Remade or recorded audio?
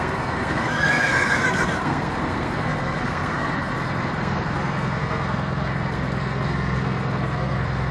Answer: remade